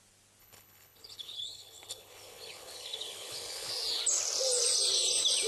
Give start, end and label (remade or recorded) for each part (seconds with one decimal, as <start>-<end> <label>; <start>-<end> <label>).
0.0-0.4 recorded; 0.4-3.7 remade; 3.7-5.5 recorded